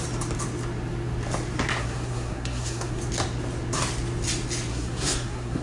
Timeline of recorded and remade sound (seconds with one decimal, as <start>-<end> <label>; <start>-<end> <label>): 0.0-1.8 recorded; 1.8-3.0 remade; 3.0-4.7 recorded; 4.7-5.6 remade

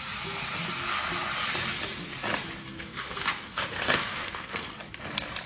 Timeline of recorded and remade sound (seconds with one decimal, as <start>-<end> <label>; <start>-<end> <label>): 0.0-2.7 recorded; 2.7-4.7 remade; 4.7-5.5 recorded

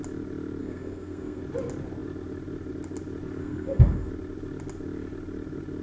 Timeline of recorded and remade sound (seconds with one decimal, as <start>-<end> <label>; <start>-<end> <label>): 0.0-0.6 recorded; 0.6-1.4 remade; 1.4-3.4 recorded; 3.4-4.1 remade; 4.1-5.8 recorded

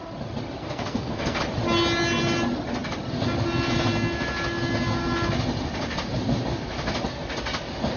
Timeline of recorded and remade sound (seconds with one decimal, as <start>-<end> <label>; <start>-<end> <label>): 0.0-0.6 recorded; 0.6-1.4 remade; 1.4-8.0 recorded

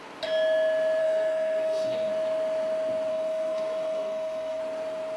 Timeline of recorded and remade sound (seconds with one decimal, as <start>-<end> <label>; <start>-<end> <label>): 0.0-1.0 recorded; 1.0-2.1 remade; 2.1-3.1 recorded; 3.1-4.6 remade; 4.6-5.2 recorded